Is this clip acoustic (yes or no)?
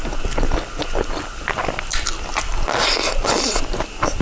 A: yes